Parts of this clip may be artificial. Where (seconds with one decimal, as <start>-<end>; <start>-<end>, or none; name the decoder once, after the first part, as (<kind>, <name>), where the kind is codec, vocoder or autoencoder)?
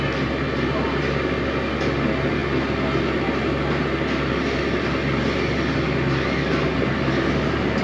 none